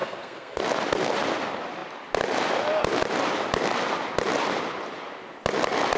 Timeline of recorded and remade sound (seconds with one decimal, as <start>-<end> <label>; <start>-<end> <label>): 0.0-0.6 remade; 0.6-6.0 recorded